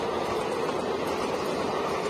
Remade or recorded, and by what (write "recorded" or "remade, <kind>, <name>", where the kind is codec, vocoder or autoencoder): recorded